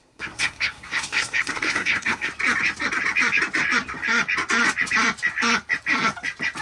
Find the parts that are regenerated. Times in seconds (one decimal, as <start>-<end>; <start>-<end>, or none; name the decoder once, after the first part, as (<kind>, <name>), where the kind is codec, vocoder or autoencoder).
0.0-2.3 (codec, SNAC)